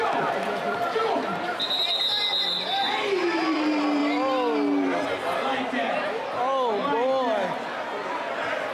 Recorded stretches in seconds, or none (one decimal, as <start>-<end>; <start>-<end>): 1.0-2.6; 4.0-8.7